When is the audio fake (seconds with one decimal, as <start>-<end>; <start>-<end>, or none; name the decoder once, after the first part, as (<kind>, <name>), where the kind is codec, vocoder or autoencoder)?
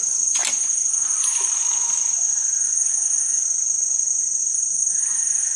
none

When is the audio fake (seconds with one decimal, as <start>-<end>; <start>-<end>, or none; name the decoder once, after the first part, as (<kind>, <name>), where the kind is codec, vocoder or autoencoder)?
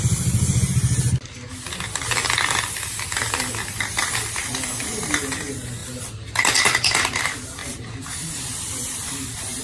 none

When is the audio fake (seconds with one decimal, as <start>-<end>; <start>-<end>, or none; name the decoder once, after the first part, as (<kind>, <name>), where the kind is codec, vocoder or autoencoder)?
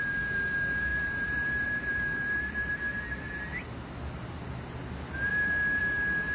0.9-2.7 (vocoder, BigVGAN v2); 5.3-5.8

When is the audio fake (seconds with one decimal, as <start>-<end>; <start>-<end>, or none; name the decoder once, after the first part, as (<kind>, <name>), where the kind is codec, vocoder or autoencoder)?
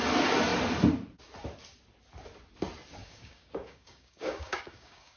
3.0-5.2 (codec, DAC)